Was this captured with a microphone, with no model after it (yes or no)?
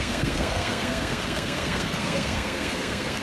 no